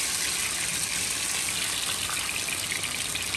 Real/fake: real